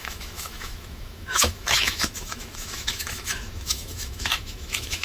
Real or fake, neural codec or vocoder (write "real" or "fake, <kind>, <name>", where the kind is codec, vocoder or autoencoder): fake, autoencoder, DAC-VAE